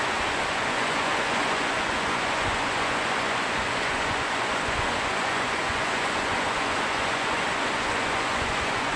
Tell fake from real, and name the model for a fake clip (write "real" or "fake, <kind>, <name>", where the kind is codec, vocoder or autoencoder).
fake, vocoder, Vocos